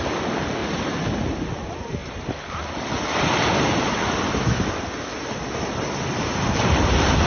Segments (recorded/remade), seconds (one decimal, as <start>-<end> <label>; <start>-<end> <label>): 0.0-0.6 remade; 0.6-1.5 recorded; 1.5-2.0 remade; 2.0-6.4 recorded; 6.4-7.3 remade